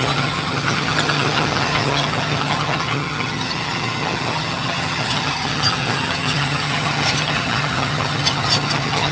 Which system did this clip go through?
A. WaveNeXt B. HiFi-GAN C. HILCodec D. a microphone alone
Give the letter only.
B